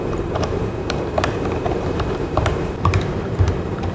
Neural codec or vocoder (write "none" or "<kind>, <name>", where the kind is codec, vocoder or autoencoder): vocoder, BigVGAN v2